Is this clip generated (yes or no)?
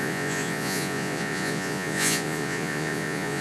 yes